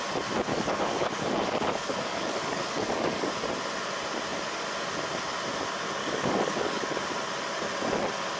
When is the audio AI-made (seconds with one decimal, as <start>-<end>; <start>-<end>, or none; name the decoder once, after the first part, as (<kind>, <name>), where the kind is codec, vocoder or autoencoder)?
0.5-3.3 (codec, DAC); 6.0-6.9